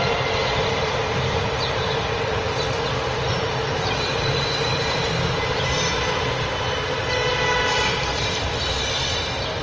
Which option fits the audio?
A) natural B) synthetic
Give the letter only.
A